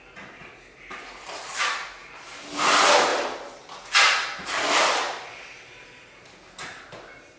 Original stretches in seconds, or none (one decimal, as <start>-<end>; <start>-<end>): 0.0-7.4